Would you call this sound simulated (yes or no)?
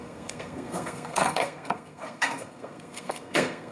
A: yes